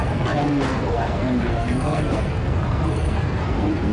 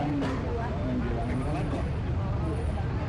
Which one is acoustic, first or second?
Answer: second